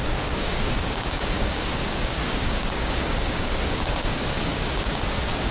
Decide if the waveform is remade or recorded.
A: remade